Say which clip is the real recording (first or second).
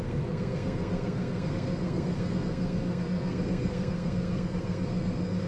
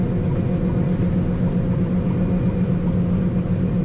second